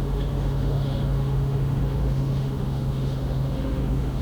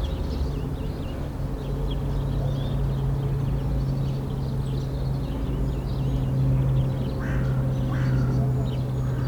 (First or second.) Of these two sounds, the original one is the second